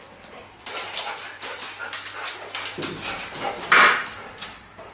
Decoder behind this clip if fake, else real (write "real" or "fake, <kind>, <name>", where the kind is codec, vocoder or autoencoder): real